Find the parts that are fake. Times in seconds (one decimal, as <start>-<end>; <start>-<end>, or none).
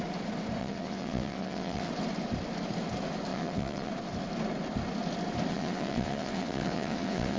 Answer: 0.6-1.9; 3.3-3.9; 5.5-7.4